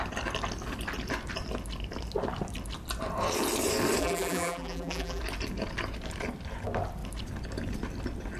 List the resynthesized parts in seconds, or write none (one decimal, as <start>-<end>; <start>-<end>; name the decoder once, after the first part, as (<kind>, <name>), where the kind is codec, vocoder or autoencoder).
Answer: 4.0-5.2 (vocoder, BigVGAN v2)